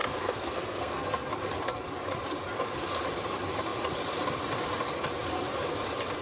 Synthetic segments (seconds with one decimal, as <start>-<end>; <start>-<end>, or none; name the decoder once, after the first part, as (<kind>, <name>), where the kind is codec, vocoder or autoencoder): 0.0-1.3 (codec, SNAC)